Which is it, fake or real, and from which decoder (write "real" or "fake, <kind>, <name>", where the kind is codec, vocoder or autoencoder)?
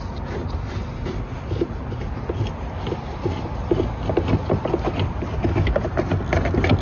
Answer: real